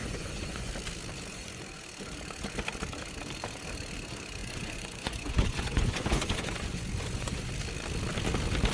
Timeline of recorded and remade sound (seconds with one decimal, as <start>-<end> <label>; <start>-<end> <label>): 0.0-0.7 remade; 0.7-1.3 recorded; 1.3-1.8 remade; 1.8-4.4 recorded; 4.4-7.5 remade; 7.5-8.7 recorded